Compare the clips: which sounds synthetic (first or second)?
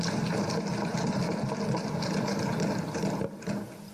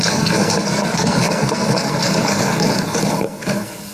second